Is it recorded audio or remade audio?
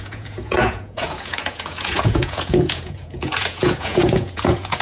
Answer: remade